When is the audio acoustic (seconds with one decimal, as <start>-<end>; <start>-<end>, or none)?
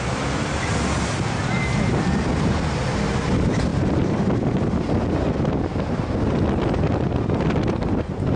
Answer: 0.0-3.7; 5.4-8.4